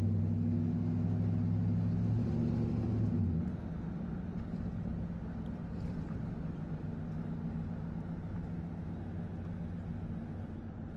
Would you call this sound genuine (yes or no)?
yes